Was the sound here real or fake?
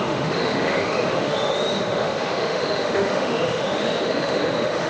fake